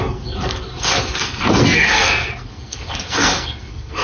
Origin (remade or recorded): remade